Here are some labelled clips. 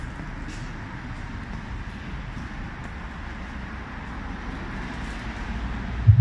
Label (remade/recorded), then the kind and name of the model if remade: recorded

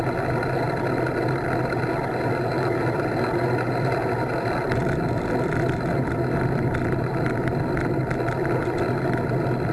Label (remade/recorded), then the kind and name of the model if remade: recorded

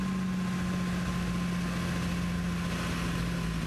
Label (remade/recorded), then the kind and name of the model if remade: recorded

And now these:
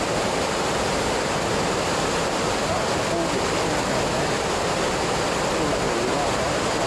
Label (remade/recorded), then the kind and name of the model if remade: recorded